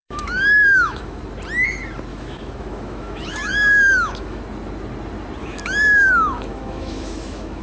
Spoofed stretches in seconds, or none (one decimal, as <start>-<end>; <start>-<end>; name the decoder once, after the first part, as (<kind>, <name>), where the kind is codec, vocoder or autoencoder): 0.0-1.2 (autoencoder, DAC-VAE); 2.1-4.4; 5.4-7.6